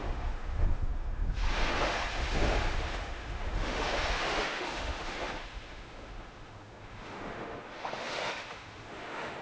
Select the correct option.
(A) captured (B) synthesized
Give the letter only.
B